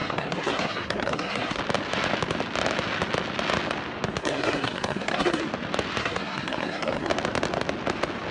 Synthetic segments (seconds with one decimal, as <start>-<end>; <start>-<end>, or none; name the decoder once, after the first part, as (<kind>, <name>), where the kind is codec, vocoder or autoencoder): 0.0-1.6 (codec, SNAC); 4.2-5.4; 6.0-7.1